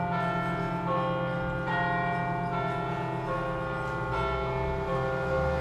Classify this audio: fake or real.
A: real